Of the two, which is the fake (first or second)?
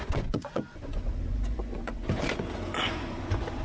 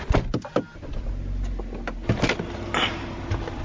first